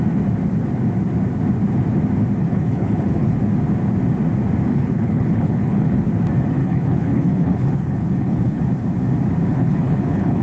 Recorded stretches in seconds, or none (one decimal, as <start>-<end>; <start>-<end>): 0.0-2.4; 3.4-4.7; 6.1-6.6; 8.6-9.5